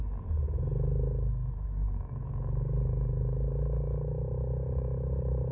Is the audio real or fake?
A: real